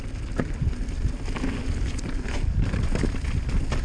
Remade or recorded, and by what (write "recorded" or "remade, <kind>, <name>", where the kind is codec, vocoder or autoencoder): recorded